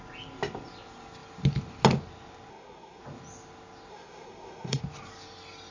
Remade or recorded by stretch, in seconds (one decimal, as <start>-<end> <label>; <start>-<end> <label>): 0.0-2.5 recorded; 2.5-3.0 remade; 3.0-3.9 recorded; 3.9-4.8 remade; 4.8-5.7 recorded